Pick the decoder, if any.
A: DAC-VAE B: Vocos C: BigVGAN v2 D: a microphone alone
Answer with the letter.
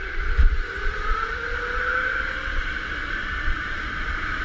D